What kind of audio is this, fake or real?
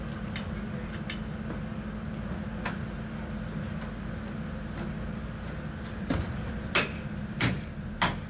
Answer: real